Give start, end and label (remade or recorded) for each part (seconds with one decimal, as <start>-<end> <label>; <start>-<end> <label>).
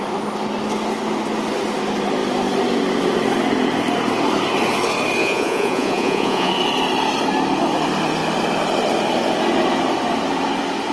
0.0-5.2 recorded; 5.2-6.5 remade; 6.5-10.9 recorded